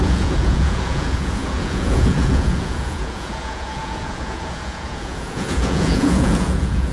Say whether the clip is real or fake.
fake